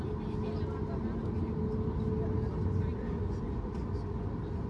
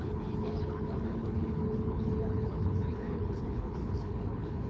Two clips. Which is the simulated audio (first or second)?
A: second